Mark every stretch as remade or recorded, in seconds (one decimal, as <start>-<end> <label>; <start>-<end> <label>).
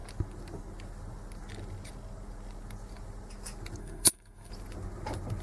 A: 0.0-3.8 recorded; 3.8-4.5 remade; 4.5-5.4 recorded